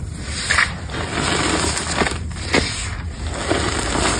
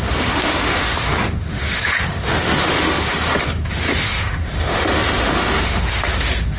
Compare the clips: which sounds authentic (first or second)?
first